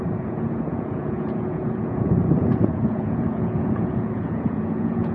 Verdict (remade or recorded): remade